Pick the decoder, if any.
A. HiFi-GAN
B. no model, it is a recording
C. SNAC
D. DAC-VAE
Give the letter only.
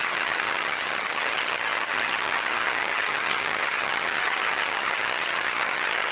A